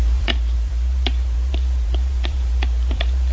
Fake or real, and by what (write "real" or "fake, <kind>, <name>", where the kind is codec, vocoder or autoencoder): fake, vocoder, BigVGAN v2